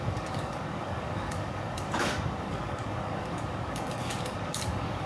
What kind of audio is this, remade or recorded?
remade